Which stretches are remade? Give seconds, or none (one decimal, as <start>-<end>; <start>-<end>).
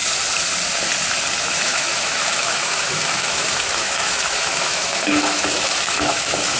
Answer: 1.4-6.6